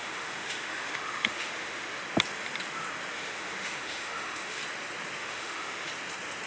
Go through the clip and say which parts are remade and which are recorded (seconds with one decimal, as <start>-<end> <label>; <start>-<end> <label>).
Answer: 0.0-2.0 remade; 2.0-3.1 recorded; 3.1-4.6 remade; 4.6-5.2 recorded; 5.2-5.9 remade; 5.9-6.5 recorded

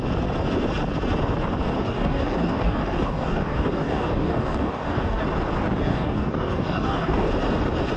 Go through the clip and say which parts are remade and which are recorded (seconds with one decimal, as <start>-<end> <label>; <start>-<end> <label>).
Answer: 0.0-1.8 recorded; 1.8-5.2 remade; 5.2-5.9 recorded; 5.9-7.3 remade; 7.3-8.0 recorded

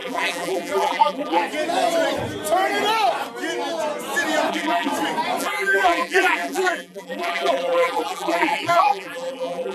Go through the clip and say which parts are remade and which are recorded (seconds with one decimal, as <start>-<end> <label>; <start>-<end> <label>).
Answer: 0.0-1.4 remade; 1.4-4.5 recorded; 4.5-4.9 remade; 4.9-5.4 recorded; 5.4-9.7 remade

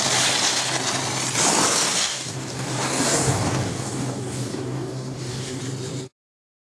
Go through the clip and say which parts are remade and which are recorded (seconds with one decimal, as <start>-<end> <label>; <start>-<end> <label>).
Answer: 0.0-2.0 recorded; 2.0-5.6 remade; 5.6-6.6 recorded

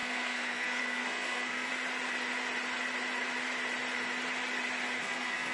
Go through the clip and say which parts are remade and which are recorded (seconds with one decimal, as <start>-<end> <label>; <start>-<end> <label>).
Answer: 0.0-1.7 remade; 1.7-5.0 recorded; 5.0-5.5 remade

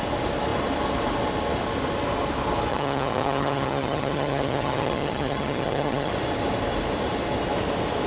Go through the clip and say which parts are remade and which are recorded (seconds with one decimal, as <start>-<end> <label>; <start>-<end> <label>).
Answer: 0.0-2.7 recorded; 2.7-6.1 remade; 6.1-8.1 recorded

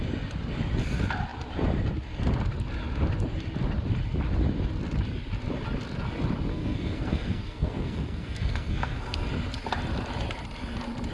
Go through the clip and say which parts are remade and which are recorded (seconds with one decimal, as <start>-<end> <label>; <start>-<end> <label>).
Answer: 0.0-6.5 recorded; 6.5-9.3 remade; 9.3-11.1 recorded